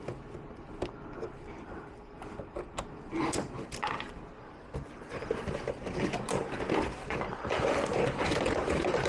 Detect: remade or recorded recorded